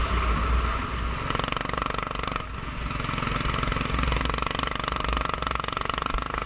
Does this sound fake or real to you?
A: real